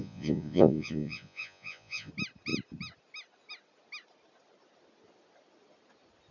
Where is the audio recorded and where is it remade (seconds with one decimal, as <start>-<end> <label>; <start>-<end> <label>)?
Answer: 0.0-2.1 remade; 2.1-6.3 recorded